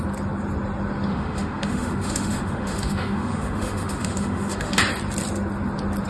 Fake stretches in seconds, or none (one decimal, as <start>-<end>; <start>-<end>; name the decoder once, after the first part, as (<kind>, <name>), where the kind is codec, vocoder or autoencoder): 1.1-4.8 (autoencoder, DAC-VAE)